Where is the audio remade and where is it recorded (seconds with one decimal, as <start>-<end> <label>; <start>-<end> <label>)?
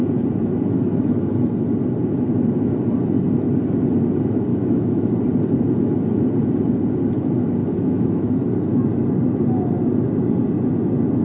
0.0-4.5 recorded; 4.5-5.1 remade; 5.1-7.6 recorded; 7.6-8.3 remade; 8.3-11.2 recorded